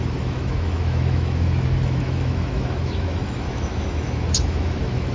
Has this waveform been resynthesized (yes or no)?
yes